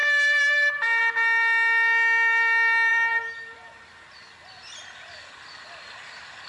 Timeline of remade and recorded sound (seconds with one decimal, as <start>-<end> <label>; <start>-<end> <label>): 0.0-1.0 remade; 1.0-2.9 recorded; 2.9-3.8 remade; 3.8-6.5 recorded